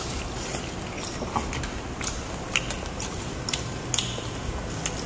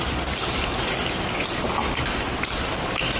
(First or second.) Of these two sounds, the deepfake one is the second